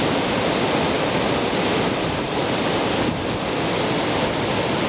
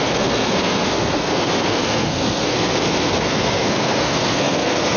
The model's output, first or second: second